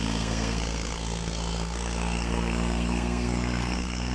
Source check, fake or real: fake